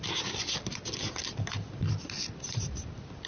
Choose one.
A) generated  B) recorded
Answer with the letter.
B